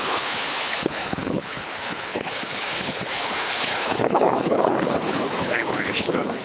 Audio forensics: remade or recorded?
remade